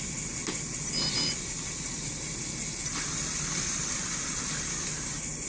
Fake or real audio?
real